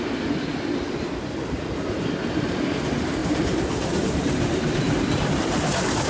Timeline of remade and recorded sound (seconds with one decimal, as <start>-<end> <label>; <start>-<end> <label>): 0.0-3.2 recorded; 3.2-5.3 remade; 5.3-6.1 recorded

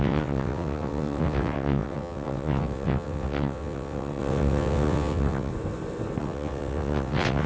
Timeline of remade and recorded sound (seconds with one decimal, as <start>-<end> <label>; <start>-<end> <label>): 0.0-5.5 remade; 5.5-6.2 recorded; 6.2-7.5 remade

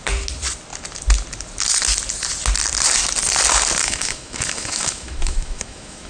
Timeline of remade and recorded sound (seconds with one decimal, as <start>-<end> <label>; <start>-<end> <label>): 0.0-3.8 recorded; 3.8-6.1 remade

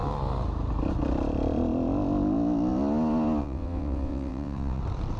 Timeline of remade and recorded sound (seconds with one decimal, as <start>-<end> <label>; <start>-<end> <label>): 0.0-3.4 recorded; 3.4-4.8 remade; 4.8-5.2 recorded

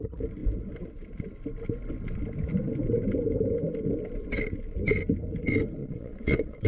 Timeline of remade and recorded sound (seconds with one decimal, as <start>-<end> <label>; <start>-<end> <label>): 0.0-5.8 recorded; 5.8-6.7 remade

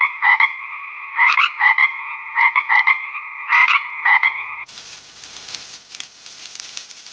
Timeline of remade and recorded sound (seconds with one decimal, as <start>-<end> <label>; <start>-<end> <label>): 0.0-1.8 recorded; 1.8-2.7 remade; 2.7-3.6 recorded; 3.6-4.7 remade; 4.7-7.1 recorded